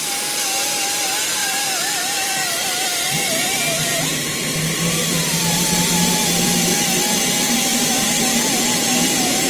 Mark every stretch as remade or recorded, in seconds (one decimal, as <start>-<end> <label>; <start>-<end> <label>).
0.0-1.4 recorded; 1.4-5.0 remade; 5.0-7.7 recorded; 7.7-8.6 remade; 8.6-9.5 recorded